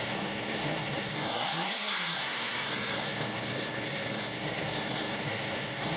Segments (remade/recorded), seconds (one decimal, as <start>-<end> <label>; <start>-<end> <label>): 0.0-6.0 remade